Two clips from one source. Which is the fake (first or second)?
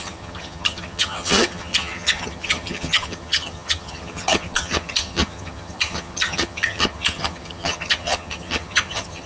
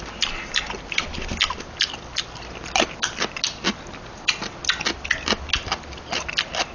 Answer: first